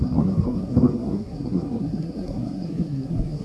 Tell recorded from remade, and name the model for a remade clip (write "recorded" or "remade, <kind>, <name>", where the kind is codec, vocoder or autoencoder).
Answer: remade, codec, SNAC